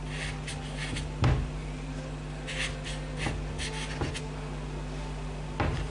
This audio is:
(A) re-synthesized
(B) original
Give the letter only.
B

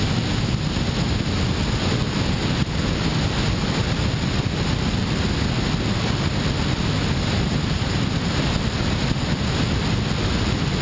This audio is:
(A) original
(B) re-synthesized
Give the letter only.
A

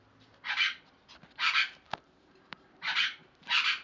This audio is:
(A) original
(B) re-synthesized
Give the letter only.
B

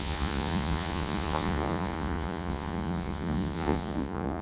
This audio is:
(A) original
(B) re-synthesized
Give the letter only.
B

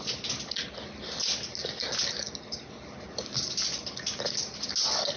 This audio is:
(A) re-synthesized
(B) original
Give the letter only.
B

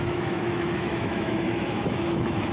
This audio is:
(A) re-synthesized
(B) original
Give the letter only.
A